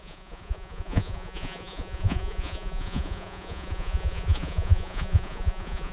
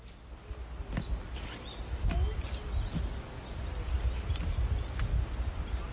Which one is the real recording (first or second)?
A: second